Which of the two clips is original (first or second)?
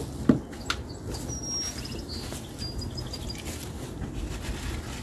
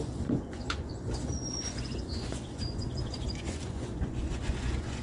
first